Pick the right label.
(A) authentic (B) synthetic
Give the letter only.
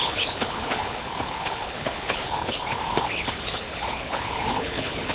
B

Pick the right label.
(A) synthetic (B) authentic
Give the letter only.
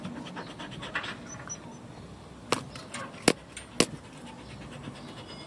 B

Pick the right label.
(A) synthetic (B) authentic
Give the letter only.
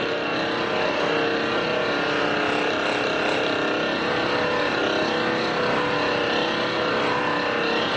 B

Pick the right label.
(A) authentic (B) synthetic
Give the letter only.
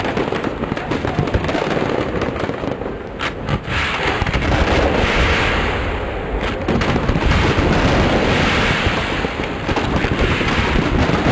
A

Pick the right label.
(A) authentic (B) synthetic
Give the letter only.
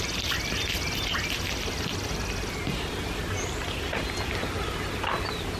A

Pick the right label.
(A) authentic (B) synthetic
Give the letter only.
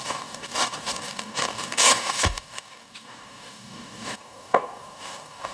B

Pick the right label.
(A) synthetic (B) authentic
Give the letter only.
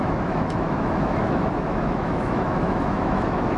A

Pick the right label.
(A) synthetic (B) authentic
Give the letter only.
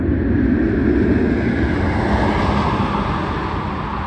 B